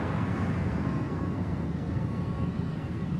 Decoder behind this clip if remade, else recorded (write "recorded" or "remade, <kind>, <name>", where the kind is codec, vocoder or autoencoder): remade, codec, SNAC